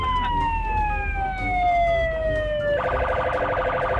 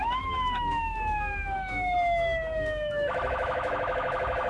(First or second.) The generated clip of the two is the second